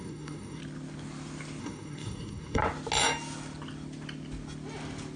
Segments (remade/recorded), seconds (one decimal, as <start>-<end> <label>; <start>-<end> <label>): 0.0-0.6 remade; 0.6-1.6 recorded; 1.6-2.6 remade; 2.6-5.2 recorded